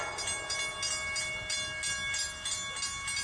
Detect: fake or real real